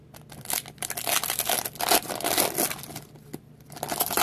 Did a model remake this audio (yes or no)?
no